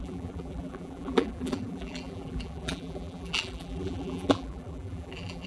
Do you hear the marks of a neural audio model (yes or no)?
yes